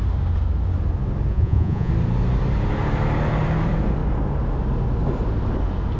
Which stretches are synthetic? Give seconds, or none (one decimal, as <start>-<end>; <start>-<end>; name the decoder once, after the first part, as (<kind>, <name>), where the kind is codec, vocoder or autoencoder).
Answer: 1.3-1.9 (vocoder, Vocos)